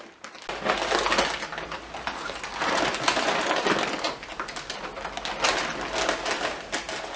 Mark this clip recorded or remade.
recorded